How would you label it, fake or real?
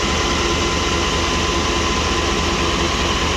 real